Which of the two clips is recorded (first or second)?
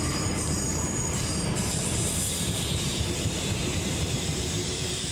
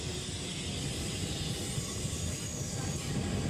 second